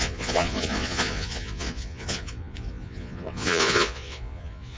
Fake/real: fake